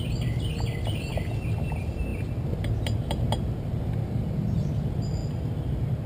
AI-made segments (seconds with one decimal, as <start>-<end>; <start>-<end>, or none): 0.0-5.2